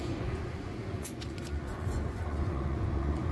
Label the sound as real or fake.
fake